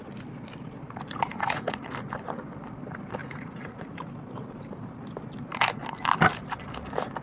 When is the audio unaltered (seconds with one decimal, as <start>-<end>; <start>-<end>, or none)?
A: 0.0-1.3; 1.9-3.2; 4.1-7.2